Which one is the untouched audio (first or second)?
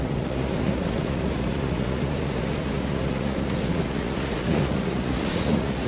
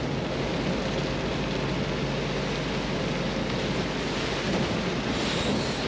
second